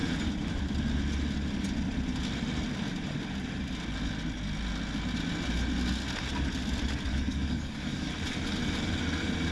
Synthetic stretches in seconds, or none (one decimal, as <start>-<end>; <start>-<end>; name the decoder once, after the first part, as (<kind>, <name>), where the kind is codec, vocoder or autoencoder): 7.1-8.1 (codec, DAC)